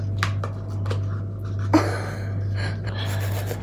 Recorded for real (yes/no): yes